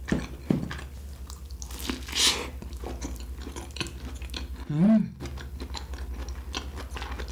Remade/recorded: recorded